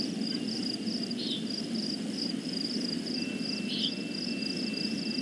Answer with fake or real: real